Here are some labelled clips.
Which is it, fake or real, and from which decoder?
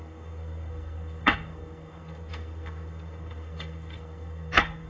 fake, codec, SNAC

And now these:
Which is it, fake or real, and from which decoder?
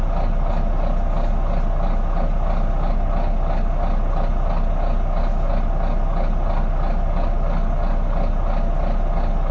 real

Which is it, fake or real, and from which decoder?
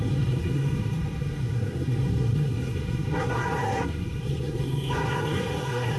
fake, codec, SNAC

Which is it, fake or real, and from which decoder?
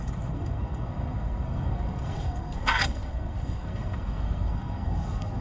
fake, codec, SNAC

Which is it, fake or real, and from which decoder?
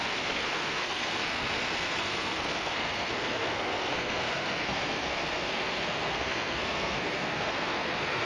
fake, codec, SNAC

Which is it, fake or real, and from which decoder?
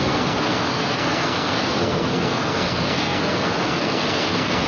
fake, codec, SNAC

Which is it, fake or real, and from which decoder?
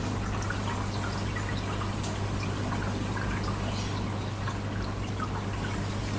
real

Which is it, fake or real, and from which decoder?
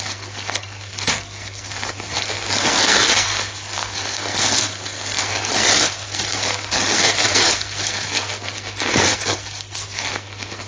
fake, codec, SNAC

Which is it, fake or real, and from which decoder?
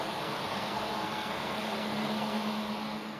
fake, codec, SNAC